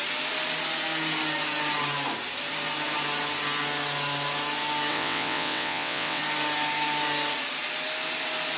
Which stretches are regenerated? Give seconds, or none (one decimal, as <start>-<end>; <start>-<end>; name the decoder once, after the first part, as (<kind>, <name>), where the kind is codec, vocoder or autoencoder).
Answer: 4.9-6.2 (vocoder, WaveNeXt)